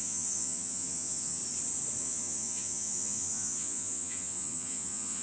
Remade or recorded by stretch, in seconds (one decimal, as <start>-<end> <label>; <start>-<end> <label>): 0.0-1.4 remade; 1.4-2.0 recorded; 2.0-5.2 remade